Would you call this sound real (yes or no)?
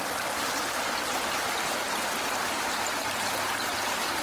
yes